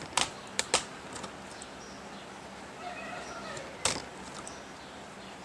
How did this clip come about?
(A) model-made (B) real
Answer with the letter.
B